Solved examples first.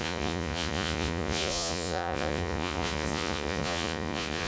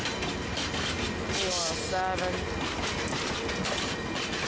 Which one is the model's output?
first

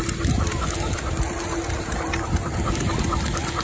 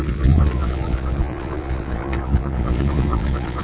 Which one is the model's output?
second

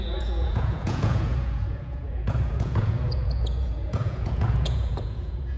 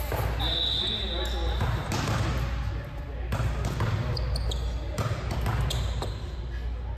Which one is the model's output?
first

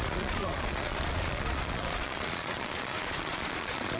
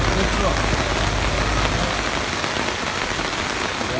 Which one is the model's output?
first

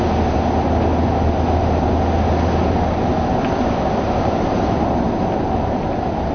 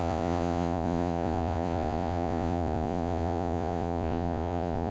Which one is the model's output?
second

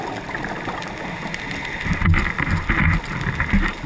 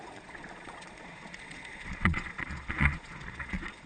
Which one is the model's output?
second